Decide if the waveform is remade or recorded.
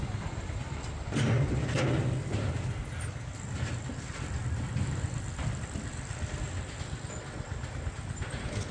recorded